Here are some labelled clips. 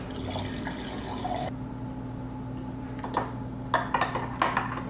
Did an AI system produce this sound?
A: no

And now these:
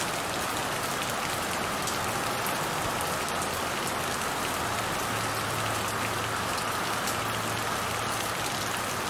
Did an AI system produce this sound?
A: no